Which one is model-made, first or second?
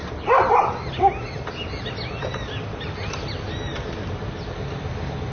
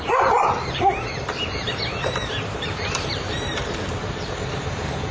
second